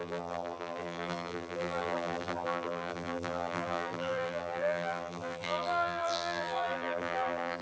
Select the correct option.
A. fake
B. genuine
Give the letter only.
A